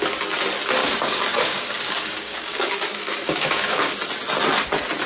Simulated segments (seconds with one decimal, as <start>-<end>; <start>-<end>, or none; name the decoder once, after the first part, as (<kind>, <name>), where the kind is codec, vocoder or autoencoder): 0.8-3.9 (codec, DAC)